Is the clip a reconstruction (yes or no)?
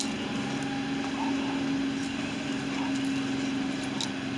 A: no